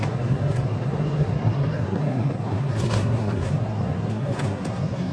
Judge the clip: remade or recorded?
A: remade